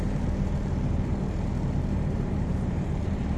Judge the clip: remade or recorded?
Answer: remade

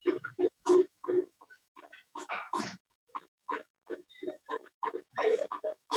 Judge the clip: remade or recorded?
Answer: remade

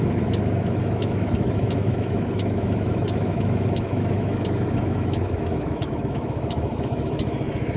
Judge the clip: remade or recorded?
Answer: remade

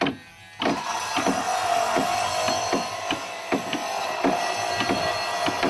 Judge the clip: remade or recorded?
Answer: recorded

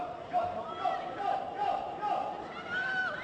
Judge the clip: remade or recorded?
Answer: recorded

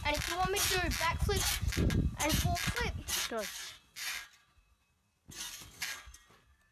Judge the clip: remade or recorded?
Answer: recorded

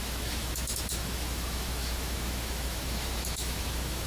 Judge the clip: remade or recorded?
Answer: remade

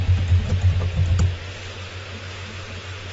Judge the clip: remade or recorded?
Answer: recorded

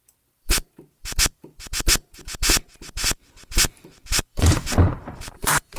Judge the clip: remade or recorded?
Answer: remade